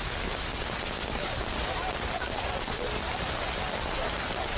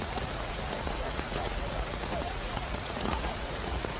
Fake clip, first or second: second